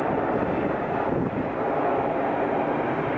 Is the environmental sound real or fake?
real